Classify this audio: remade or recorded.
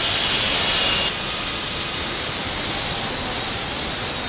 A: recorded